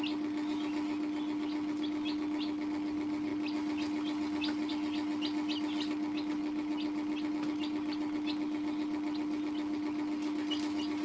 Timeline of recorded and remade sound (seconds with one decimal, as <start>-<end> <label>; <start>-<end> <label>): 0.0-11.0 recorded